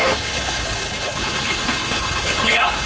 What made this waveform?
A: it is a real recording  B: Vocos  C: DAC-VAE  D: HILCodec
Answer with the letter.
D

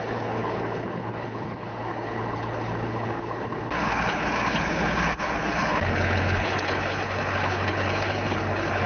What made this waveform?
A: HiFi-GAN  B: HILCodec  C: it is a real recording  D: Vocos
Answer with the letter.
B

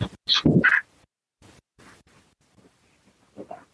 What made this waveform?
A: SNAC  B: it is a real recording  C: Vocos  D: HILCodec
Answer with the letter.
B